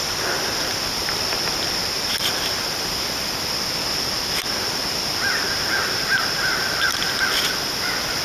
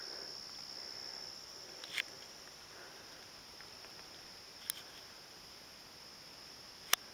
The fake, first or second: first